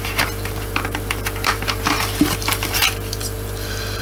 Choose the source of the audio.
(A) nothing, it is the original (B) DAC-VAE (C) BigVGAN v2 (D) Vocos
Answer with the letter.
C